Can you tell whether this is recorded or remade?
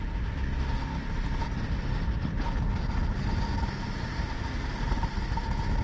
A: recorded